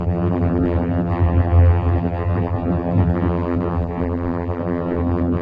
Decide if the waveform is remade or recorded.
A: remade